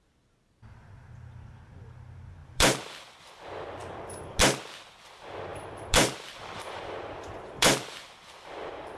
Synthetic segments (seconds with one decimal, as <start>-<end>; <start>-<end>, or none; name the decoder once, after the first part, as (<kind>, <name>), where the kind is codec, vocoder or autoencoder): 2.4-3.3 (vocoder, BigVGAN v2); 3.8-4.4; 5.5-9.0